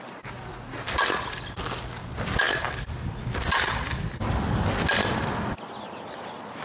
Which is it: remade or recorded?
recorded